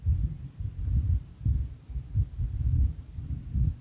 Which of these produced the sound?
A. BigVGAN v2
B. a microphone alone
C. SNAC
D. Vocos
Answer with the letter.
B